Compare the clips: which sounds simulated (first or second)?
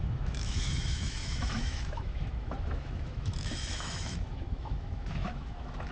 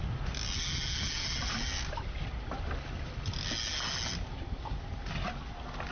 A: first